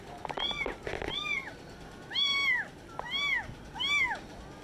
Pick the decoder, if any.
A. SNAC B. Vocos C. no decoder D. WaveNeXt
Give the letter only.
C